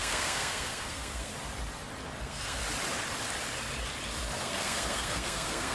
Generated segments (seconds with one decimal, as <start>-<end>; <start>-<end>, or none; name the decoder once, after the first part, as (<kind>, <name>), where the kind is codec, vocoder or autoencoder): 0.0-1.3 (codec, SNAC); 2.2-2.6; 4.4-5.7